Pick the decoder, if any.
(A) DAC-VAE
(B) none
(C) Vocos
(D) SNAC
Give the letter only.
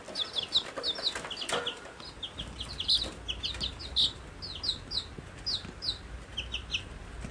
B